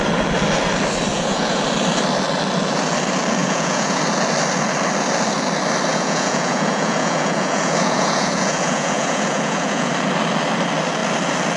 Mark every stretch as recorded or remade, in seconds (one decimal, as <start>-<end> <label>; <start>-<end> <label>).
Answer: 0.0-1.1 recorded; 1.1-1.6 remade; 1.6-3.4 recorded; 3.4-4.0 remade; 4.0-5.9 recorded; 5.9-9.9 remade; 9.9-11.6 recorded